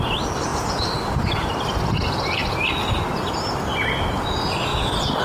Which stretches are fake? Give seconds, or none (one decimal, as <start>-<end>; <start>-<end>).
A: 4.7-5.2